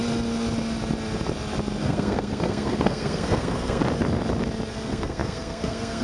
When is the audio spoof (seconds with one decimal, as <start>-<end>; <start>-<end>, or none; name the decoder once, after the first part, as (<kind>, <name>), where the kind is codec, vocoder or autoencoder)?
1.8-3.8 (codec, SNAC); 4.7-6.0